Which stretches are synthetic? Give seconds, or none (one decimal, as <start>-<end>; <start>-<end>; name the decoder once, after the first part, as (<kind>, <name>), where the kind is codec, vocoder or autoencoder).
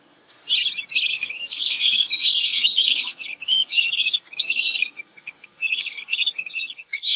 0.0-0.4 (codec, SNAC); 1.1-7.2